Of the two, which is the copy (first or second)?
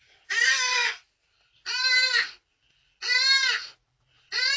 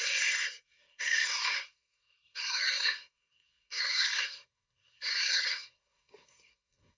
second